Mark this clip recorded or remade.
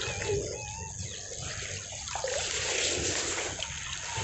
recorded